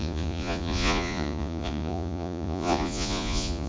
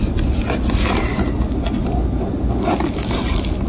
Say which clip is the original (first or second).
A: second